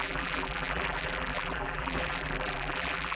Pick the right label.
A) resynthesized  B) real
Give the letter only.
A